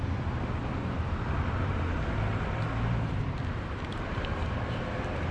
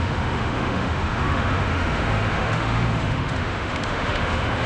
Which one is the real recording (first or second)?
first